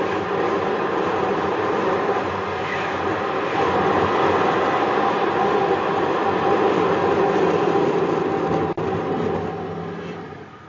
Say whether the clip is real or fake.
real